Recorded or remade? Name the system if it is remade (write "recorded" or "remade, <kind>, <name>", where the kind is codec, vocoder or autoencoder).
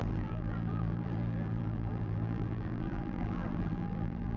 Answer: remade, vocoder, BigVGAN v2